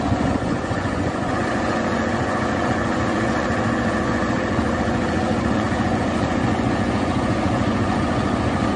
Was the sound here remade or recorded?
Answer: remade